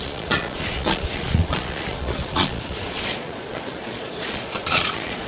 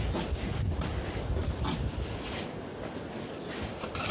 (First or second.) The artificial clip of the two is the first